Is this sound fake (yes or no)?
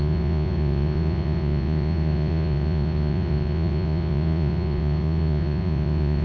yes